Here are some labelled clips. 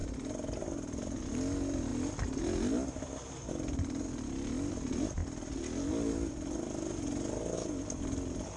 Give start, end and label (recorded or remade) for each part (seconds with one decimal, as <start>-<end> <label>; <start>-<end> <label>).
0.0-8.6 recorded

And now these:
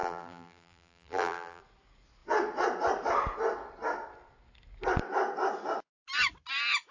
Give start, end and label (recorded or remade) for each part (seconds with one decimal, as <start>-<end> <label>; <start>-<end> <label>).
0.0-1.6 remade; 1.6-6.9 recorded

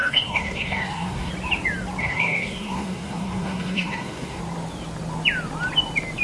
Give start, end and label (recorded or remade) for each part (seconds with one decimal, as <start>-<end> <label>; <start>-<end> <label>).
0.0-1.3 remade; 1.3-2.0 recorded; 2.0-4.4 remade; 4.4-6.2 recorded

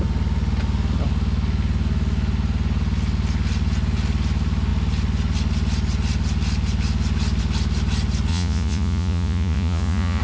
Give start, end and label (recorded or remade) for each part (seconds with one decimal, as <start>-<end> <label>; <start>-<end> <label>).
0.0-8.3 recorded; 8.3-10.2 remade

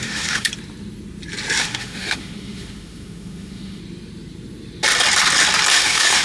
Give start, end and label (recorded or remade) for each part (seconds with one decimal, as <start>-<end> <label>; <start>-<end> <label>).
0.0-0.5 remade; 0.5-1.6 recorded; 1.6-3.8 remade; 3.8-5.7 recorded; 5.7-6.2 remade

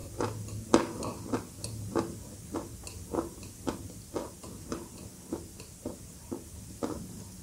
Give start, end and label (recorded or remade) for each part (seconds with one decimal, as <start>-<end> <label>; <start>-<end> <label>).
0.0-2.7 recorded; 2.7-3.7 remade; 3.7-4.2 recorded; 4.2-6.6 remade; 6.6-7.4 recorded